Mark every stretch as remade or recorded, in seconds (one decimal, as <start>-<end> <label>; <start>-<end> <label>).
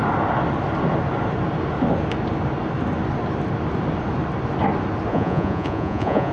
0.0-5.1 recorded; 5.1-6.3 remade